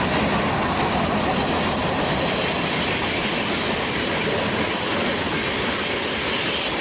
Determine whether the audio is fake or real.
real